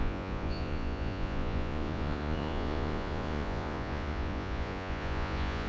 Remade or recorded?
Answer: remade